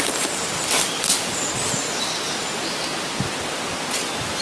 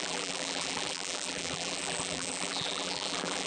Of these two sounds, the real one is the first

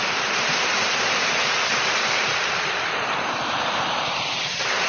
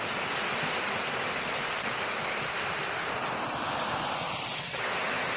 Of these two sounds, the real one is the second